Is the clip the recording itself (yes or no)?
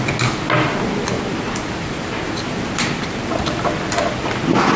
yes